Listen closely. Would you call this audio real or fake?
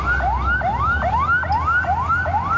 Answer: real